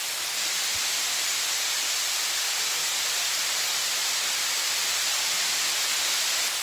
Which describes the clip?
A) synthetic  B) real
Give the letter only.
A